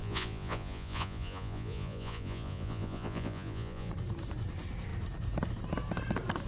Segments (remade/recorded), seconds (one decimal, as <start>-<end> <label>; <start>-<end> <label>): 0.0-3.9 remade; 3.9-6.5 recorded